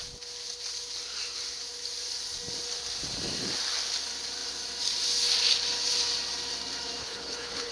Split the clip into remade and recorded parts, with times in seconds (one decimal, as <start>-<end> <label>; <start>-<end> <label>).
0.0-7.0 recorded; 7.0-7.7 remade